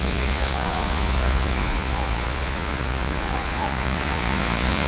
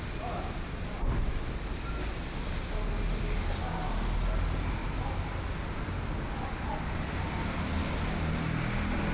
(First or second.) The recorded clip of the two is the second